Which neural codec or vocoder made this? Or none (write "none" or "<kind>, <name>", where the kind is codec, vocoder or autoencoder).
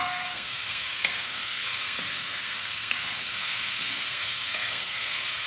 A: codec, SNAC